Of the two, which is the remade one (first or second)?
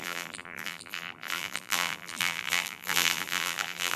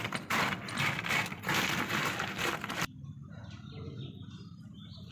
first